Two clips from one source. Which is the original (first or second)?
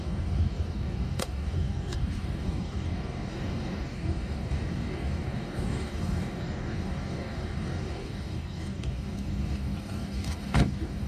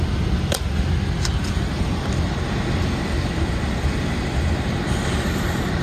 second